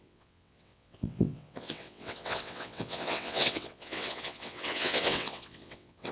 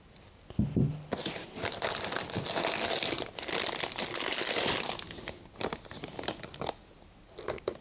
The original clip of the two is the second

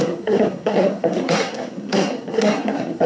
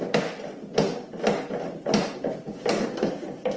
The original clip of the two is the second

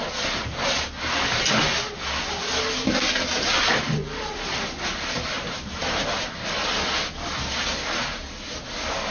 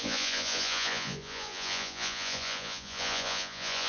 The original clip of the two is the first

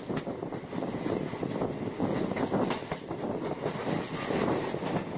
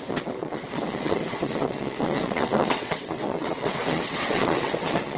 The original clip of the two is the first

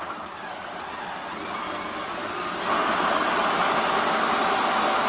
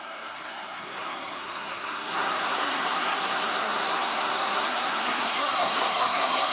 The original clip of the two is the first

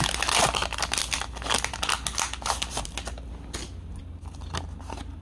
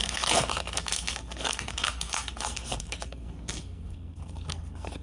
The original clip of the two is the first